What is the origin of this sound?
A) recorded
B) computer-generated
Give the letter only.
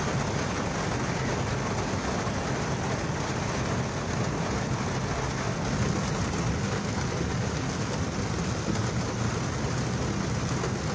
A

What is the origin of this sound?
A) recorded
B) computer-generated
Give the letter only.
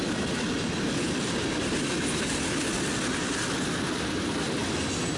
A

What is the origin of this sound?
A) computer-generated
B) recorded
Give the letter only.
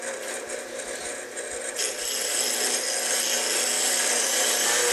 A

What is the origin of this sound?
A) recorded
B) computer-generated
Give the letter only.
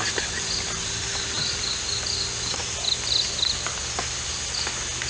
A